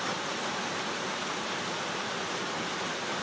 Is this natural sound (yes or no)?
yes